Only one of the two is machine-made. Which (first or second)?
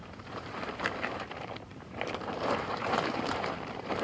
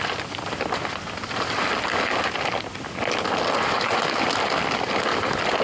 first